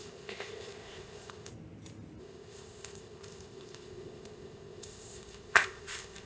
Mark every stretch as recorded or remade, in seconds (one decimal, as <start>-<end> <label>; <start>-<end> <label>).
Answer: 0.0-1.5 remade; 1.5-2.2 recorded; 2.2-6.3 remade